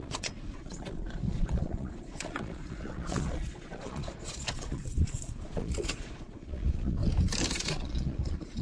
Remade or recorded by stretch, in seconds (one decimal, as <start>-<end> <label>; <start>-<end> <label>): 0.0-7.0 remade; 7.0-7.5 recorded; 7.5-8.6 remade